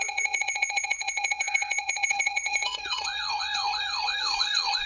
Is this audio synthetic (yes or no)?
yes